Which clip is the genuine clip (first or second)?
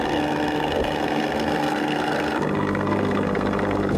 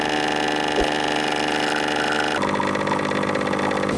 second